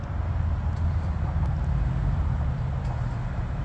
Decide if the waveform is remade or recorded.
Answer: recorded